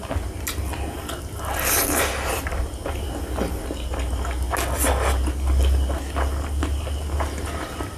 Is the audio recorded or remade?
recorded